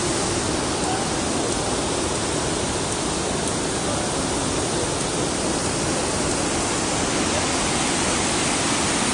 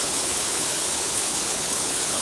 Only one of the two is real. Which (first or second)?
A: first